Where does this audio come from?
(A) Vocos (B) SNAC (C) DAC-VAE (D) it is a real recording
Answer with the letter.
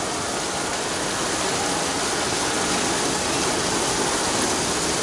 D